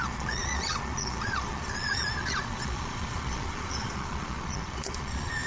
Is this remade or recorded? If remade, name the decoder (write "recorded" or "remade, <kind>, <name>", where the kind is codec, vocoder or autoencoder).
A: remade, vocoder, Vocos